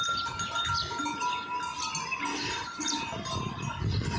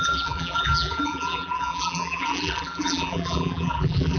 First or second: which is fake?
second